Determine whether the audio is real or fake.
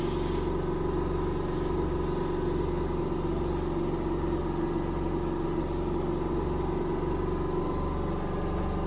real